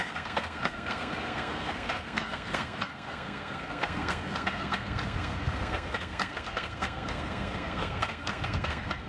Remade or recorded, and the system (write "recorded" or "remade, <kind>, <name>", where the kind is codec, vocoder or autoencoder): remade, codec, SNAC